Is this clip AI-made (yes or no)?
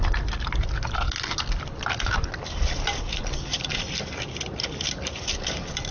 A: no